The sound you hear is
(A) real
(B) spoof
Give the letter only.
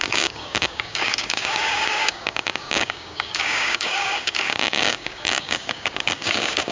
B